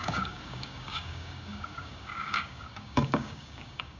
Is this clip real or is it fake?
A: fake